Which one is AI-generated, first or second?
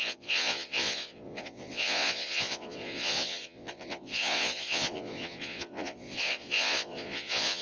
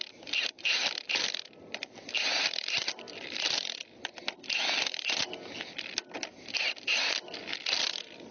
first